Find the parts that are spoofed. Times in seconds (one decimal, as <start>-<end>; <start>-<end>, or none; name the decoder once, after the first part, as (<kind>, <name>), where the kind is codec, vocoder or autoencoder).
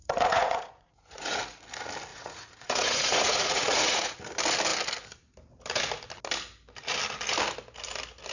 0.0-1.4 (vocoder, Vocos); 2.1-4.2